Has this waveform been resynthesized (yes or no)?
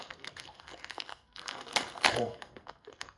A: yes